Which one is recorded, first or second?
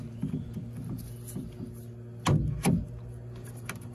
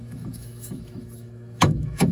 first